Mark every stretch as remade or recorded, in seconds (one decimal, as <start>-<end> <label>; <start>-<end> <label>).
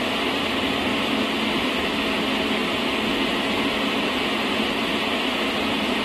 0.0-6.0 recorded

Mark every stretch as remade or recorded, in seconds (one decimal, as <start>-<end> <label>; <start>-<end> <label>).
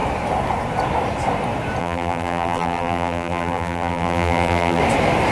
0.0-1.8 recorded; 1.8-4.8 remade; 4.8-5.3 recorded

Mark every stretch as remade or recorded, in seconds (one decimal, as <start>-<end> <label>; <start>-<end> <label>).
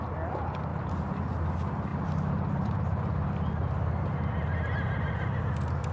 0.0-0.7 recorded; 0.7-1.2 remade; 1.2-1.9 recorded; 1.9-5.4 remade; 5.4-5.9 recorded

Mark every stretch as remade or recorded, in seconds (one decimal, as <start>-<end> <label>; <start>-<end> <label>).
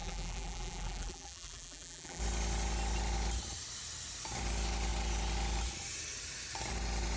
0.0-2.2 remade; 2.2-7.2 recorded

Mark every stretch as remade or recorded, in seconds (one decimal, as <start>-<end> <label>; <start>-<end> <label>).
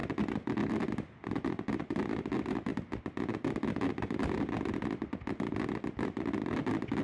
0.0-0.7 recorded; 0.7-2.7 remade; 2.7-3.9 recorded; 3.9-7.0 remade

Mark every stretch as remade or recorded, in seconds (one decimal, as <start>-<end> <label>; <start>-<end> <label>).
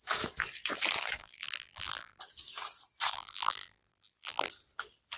0.0-1.2 recorded; 1.2-2.2 remade; 2.2-3.1 recorded; 3.1-4.5 remade; 4.5-5.2 recorded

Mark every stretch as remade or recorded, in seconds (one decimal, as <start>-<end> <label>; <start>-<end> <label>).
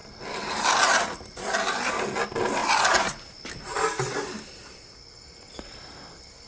0.0-6.5 recorded